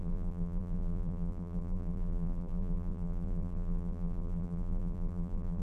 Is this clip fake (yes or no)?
yes